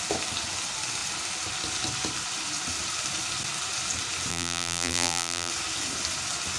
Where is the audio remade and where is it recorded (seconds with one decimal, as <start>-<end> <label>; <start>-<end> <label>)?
0.0-4.3 recorded; 4.3-5.5 remade; 5.5-6.6 recorded